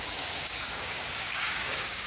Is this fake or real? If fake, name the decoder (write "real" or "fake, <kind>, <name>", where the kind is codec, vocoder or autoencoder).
fake, codec, DAC